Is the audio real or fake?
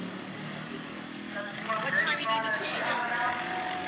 fake